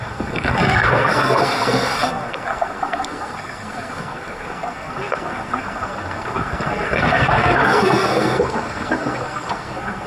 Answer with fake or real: fake